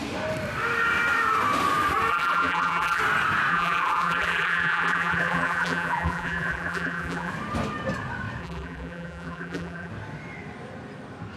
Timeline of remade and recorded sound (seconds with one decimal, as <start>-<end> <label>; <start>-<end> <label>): 0.0-2.1 recorded; 2.1-3.0 remade; 3.0-3.5 recorded; 3.5-7.3 remade; 7.3-8.4 recorded; 8.4-9.9 remade; 9.9-11.4 recorded